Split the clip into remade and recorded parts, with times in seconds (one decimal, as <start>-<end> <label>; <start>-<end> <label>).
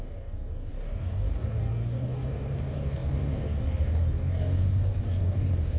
0.0-5.8 remade